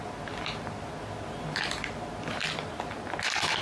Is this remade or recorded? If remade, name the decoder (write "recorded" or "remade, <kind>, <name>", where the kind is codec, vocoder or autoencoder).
recorded